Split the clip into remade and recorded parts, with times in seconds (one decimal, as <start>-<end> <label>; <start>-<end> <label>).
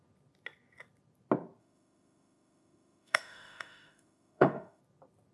0.0-1.6 recorded; 1.6-4.8 remade; 4.8-5.3 recorded